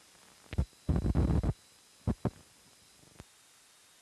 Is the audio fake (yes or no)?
no